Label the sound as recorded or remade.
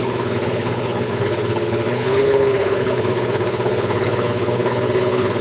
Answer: remade